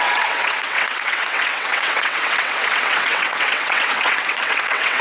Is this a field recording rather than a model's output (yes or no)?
no